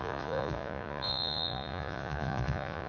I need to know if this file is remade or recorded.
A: remade